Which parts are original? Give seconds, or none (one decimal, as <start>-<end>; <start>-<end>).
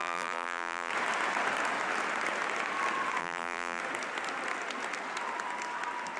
0.9-3.2; 3.8-6.2